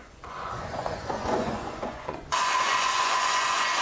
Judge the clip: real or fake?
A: fake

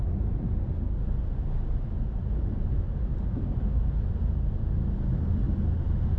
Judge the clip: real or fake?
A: real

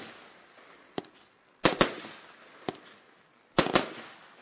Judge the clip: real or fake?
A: real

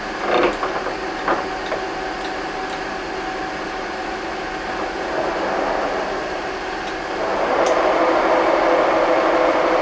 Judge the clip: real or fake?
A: real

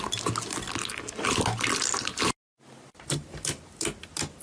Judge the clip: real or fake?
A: real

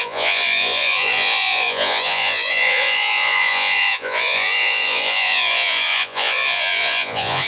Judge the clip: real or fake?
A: fake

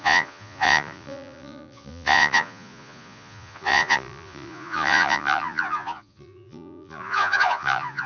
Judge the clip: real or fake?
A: fake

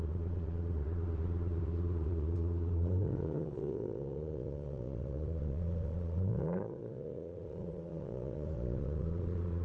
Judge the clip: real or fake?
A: fake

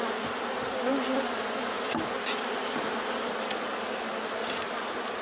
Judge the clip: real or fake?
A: real